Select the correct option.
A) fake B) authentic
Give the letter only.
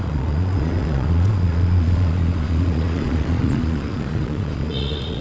A